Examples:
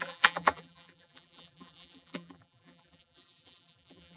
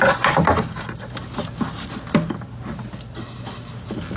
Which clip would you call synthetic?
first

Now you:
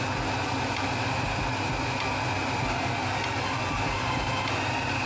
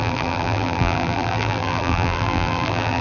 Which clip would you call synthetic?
second